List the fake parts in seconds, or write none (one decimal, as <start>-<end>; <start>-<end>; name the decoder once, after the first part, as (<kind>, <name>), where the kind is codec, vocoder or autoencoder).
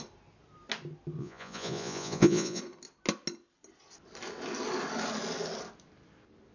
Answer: 1.2-2.6 (vocoder, Vocos)